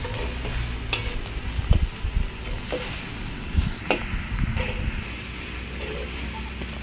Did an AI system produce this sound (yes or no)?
no